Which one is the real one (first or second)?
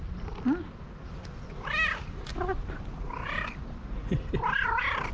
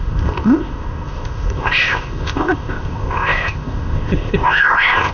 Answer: first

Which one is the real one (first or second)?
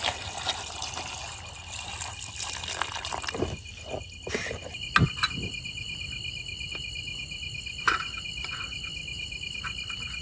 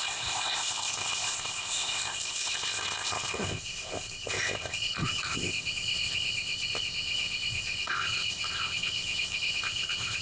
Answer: first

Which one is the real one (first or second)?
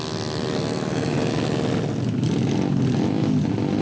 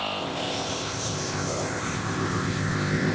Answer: first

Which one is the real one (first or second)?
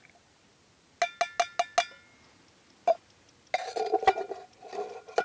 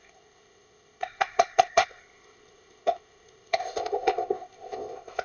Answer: first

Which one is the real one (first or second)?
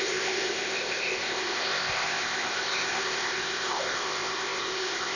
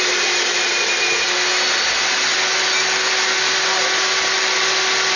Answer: second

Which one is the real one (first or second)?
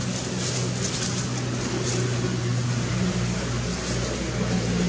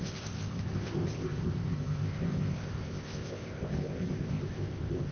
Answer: first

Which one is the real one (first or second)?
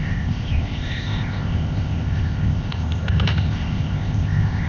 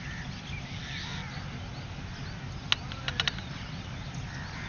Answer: second